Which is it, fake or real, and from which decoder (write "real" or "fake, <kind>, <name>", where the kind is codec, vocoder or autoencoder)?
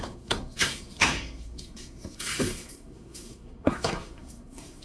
fake, codec, SNAC